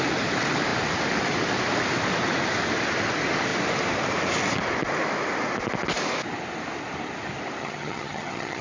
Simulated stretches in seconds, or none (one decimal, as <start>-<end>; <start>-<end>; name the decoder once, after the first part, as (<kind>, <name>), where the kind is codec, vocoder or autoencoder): 7.6-8.6 (vocoder, HiFi-GAN)